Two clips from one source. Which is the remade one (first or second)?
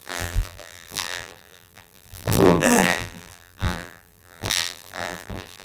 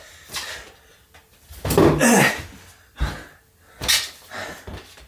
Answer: first